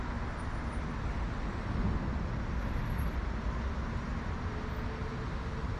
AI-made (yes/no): no